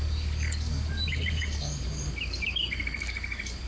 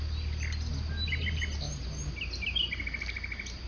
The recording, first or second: second